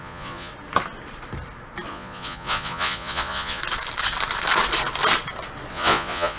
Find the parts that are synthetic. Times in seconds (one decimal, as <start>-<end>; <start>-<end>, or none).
0.0-0.5; 1.9-3.6; 5.7-6.4